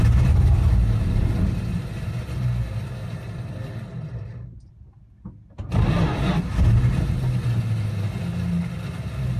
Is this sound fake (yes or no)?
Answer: no